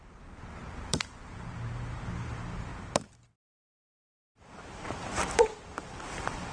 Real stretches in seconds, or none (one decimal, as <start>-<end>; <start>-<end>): none

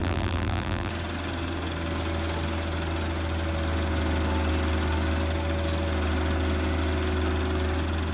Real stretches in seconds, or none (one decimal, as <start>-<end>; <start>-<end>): 0.9-8.1

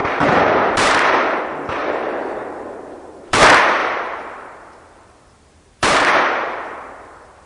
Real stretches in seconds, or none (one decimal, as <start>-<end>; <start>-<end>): 1.4-1.8; 3.4-3.8

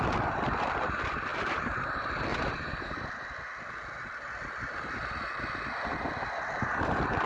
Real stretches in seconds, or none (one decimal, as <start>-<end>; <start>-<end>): 0.0-1.3; 1.9-2.3; 3.1-7.3

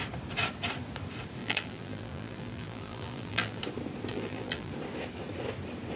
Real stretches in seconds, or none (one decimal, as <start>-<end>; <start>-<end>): 0.0-1.4; 3.6-4.1; 4.7-6.0

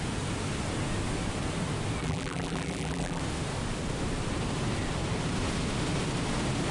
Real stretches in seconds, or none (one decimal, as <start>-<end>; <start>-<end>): 0.0-2.0; 3.2-6.7

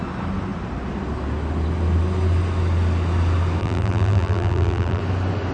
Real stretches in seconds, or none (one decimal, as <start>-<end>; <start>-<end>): 0.0-3.6; 5.0-5.5